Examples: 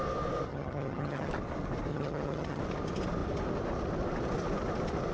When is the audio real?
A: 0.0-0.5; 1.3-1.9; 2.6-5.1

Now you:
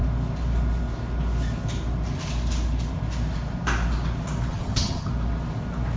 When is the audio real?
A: 0.0-4.5; 5.1-6.0

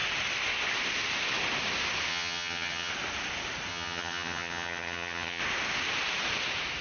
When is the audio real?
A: 0.0-2.1; 2.9-3.7; 5.4-6.8

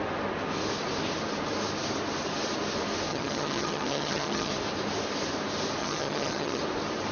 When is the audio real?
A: 0.0-3.1; 4.5-5.8; 6.6-7.1

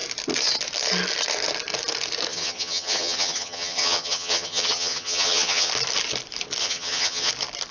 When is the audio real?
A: 0.0-2.3; 5.7-6.6; 7.3-7.7

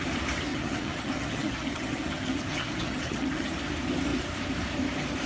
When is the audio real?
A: 0.0-0.5; 3.5-5.3